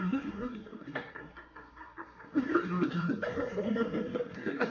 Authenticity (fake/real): fake